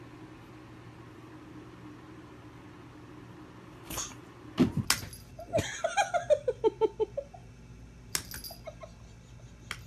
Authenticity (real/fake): real